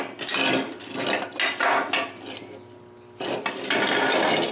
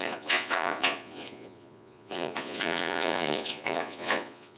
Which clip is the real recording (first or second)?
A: first